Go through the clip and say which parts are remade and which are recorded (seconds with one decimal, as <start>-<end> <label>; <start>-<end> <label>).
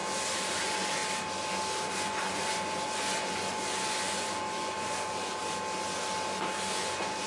0.0-0.6 recorded; 0.6-1.0 remade; 1.0-1.9 recorded; 1.9-5.4 remade; 5.4-6.8 recorded; 6.8-7.3 remade